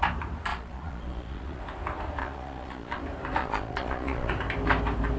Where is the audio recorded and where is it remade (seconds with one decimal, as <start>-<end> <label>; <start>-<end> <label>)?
0.0-0.5 recorded; 0.5-1.6 remade; 1.6-2.2 recorded; 2.2-3.0 remade; 3.0-3.4 recorded; 3.4-4.3 remade; 4.3-5.2 recorded